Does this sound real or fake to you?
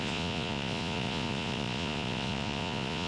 fake